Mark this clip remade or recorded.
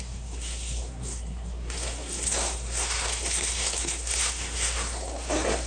remade